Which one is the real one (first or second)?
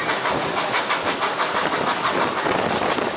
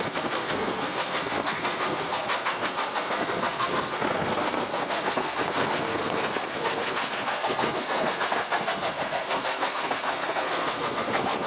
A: first